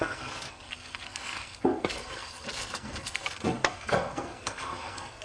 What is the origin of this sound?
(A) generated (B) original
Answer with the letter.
A